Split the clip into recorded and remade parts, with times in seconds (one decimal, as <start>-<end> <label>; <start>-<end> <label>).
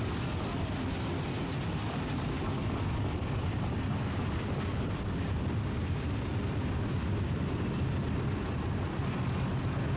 0.0-10.0 recorded